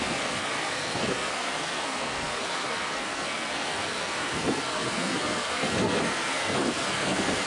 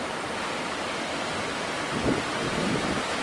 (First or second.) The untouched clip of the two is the second